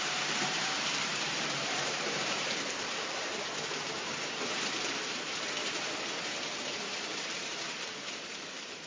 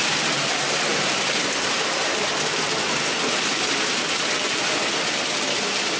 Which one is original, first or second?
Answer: second